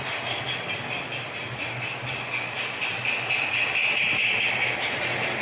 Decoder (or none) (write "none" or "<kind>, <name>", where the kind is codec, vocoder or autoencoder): none